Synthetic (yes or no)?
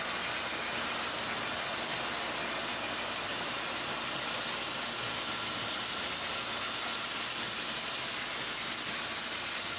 no